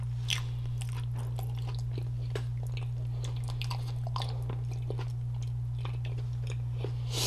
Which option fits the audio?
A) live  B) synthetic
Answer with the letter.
A